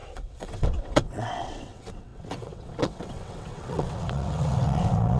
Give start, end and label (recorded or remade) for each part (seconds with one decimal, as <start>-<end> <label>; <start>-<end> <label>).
0.0-5.2 remade